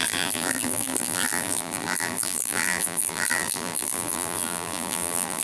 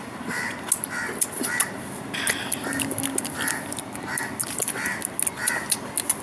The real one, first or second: second